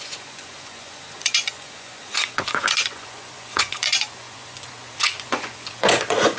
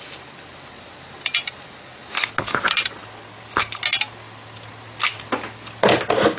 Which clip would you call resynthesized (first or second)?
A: first